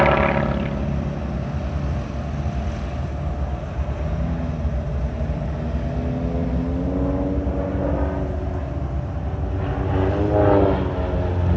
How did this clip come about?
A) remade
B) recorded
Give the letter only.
B